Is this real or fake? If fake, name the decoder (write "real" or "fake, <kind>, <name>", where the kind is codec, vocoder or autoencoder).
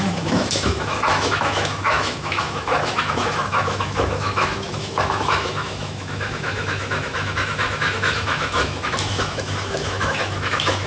fake, autoencoder, DAC-VAE